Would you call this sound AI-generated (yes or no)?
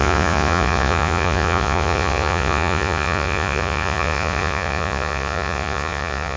yes